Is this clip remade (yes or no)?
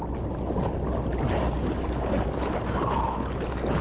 no